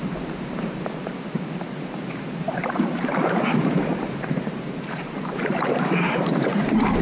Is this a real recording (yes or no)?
no